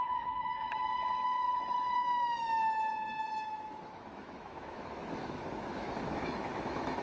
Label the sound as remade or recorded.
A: remade